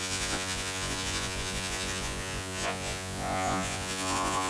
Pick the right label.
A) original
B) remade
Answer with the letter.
B